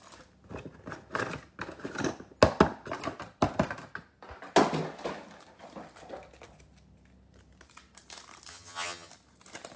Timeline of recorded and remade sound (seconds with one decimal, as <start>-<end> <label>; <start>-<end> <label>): 0.0-8.5 recorded; 8.5-9.1 remade; 9.1-9.8 recorded